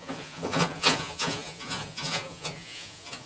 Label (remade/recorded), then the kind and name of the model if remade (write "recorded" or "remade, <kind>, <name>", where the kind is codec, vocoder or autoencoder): remade, vocoder, Vocos